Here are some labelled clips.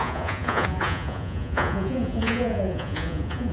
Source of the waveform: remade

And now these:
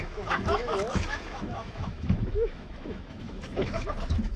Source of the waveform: remade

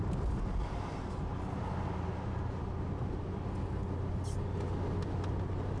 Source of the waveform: recorded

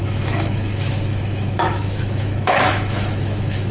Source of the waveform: remade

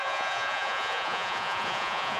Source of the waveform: remade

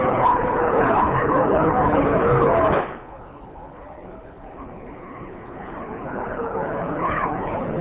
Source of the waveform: remade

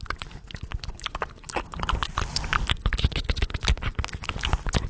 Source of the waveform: recorded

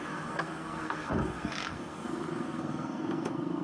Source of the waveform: remade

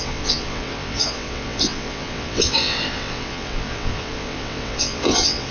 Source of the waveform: remade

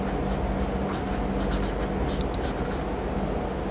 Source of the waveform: recorded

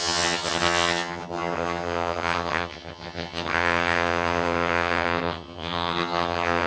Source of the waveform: remade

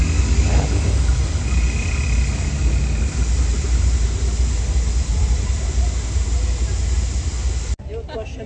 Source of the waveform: recorded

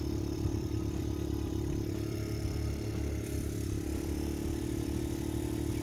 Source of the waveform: remade